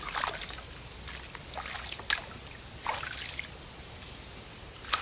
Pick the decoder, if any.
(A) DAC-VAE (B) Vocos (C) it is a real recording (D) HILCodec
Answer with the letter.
C